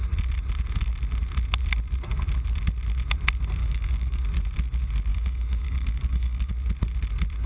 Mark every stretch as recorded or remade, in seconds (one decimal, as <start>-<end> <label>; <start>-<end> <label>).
0.0-3.6 recorded; 3.6-4.2 remade; 4.2-5.1 recorded; 5.1-6.5 remade; 6.5-7.5 recorded